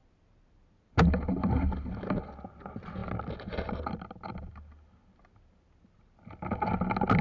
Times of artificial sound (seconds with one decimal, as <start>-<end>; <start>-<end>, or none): none